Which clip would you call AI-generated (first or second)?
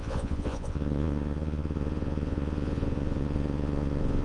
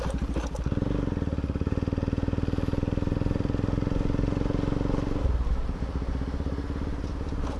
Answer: first